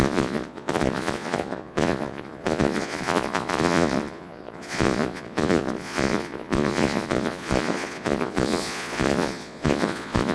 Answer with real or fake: fake